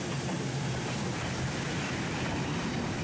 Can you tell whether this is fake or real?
real